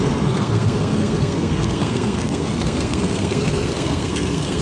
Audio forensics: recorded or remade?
remade